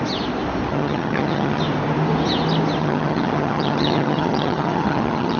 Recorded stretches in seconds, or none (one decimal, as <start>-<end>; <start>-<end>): 0.0-0.7; 1.6-2.8